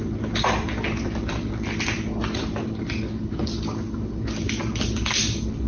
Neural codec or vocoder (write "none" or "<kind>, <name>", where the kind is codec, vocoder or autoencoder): none